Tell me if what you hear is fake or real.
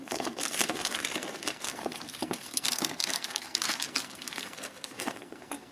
fake